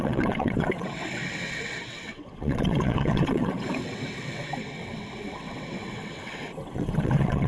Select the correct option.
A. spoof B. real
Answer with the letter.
A